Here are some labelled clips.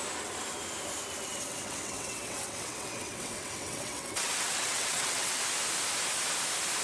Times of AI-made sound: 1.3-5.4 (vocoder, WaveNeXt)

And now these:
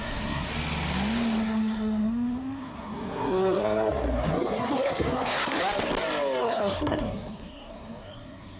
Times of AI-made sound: 0.0-0.5 (codec, SNAC); 1.4-5.6; 6.4-8.6

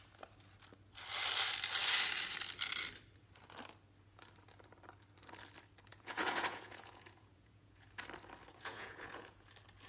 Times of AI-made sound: 5.9-7.9 (vocoder, Vocos); 8.5-9.5

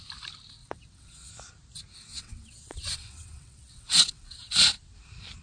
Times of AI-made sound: 0.6-1.3 (vocoder, WaveNeXt); 2.1-4.5

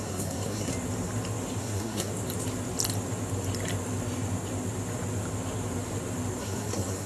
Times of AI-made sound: 0.0-0.7 (codec, SNAC); 1.6-2.1; 6.4-7.1